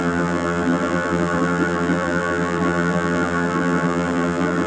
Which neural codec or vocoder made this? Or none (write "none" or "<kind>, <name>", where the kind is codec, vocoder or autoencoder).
vocoder, BigVGAN v2